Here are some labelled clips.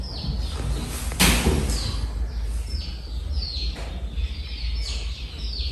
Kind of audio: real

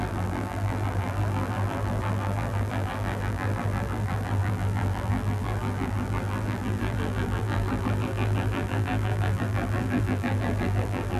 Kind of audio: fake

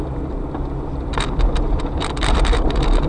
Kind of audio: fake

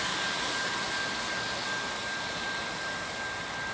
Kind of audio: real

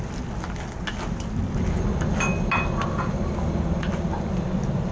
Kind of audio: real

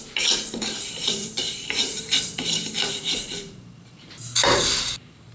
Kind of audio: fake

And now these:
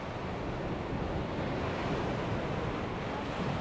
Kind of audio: real